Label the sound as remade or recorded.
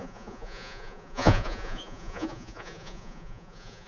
remade